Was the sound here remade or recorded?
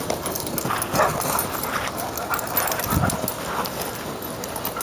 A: recorded